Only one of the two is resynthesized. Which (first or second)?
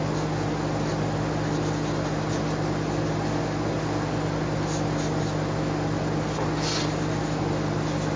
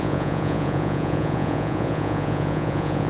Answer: second